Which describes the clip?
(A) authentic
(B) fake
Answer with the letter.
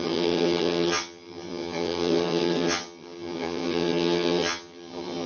B